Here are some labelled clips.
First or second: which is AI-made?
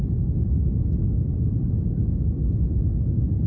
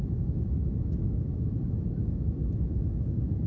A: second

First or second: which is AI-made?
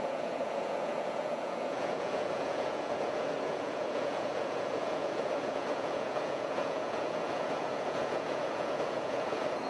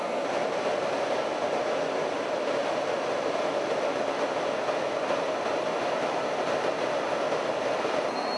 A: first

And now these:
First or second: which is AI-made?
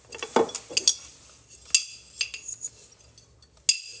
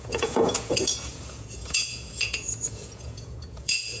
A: second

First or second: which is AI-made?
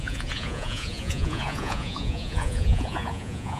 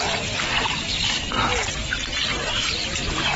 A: first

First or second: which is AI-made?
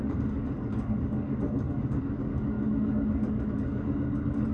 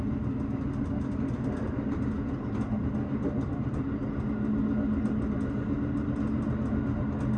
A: first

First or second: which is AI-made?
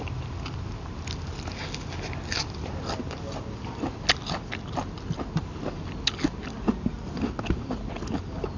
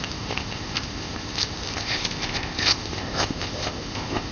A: second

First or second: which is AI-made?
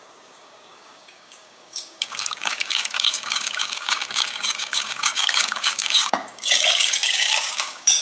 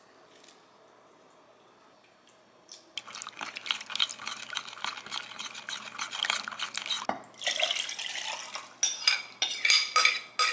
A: first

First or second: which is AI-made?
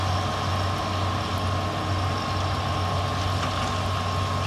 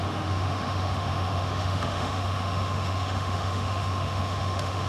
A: second